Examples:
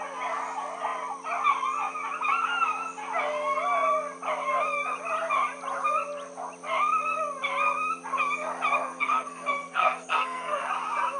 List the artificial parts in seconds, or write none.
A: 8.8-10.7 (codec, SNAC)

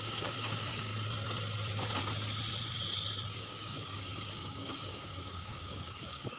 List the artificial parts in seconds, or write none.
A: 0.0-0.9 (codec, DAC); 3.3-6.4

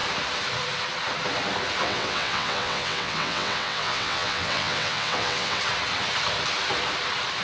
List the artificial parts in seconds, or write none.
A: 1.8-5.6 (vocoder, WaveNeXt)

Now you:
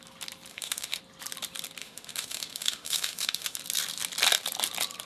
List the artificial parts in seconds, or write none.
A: 0.5-1.0 (autoencoder, DAC-VAE); 1.8-3.6

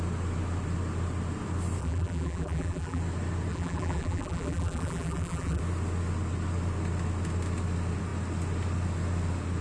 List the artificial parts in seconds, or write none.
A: 1.8-3.0 (vocoder, BigVGAN v2); 3.5-5.6

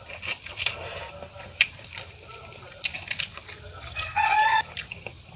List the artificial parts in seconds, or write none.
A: none

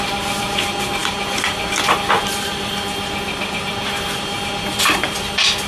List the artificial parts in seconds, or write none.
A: none